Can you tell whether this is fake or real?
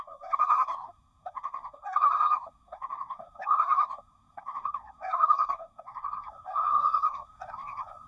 fake